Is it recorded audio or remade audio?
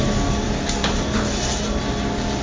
recorded